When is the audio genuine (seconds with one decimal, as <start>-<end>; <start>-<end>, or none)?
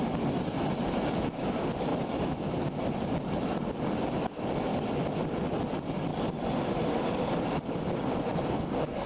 0.0-8.5